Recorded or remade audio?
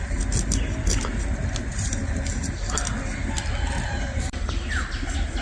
recorded